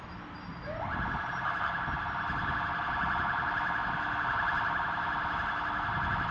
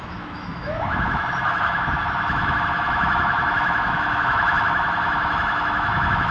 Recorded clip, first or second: first